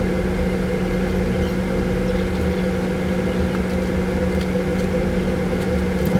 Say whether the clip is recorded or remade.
recorded